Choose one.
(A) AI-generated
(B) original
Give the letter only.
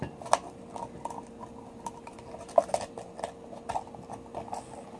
B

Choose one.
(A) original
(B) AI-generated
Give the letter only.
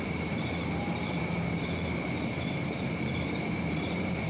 B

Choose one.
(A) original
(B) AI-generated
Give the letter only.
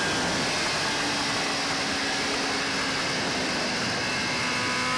A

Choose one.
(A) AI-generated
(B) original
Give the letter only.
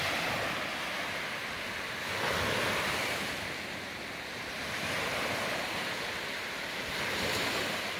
B